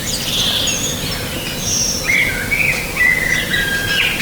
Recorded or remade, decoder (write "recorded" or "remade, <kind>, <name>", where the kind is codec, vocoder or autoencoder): recorded